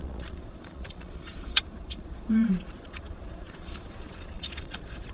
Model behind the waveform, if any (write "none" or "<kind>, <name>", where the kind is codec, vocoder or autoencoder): vocoder, Vocos